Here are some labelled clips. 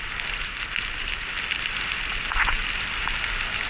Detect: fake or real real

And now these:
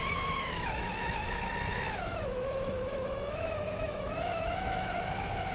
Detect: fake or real fake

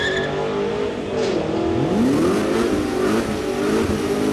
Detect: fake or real real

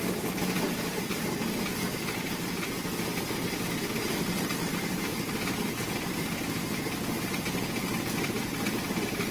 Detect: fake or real real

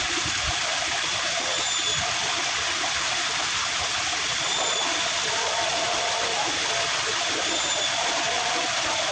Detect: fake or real real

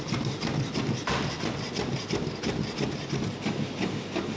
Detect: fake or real real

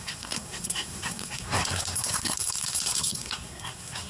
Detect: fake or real fake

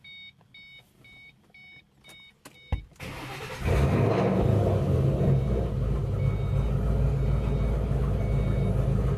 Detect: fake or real real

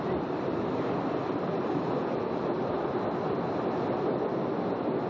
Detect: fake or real real